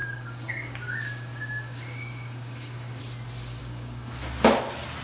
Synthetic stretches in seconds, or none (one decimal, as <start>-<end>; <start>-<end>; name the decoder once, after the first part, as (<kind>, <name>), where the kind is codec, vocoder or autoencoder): 0.0-3.0 (codec, DAC); 3.6-4.2